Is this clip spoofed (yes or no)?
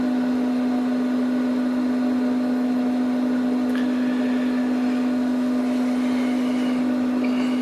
no